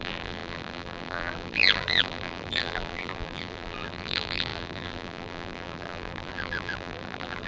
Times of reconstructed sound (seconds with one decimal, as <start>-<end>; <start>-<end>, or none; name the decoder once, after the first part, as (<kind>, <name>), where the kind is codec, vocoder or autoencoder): 0.0-7.5 (vocoder, BigVGAN v2)